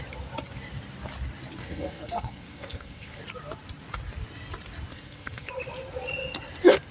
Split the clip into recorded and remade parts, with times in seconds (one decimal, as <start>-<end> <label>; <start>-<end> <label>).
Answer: 0.0-1.6 recorded; 1.6-3.2 remade; 3.2-4.9 recorded; 4.9-5.5 remade; 5.5-6.9 recorded